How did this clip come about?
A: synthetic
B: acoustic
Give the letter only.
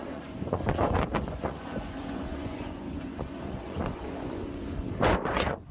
A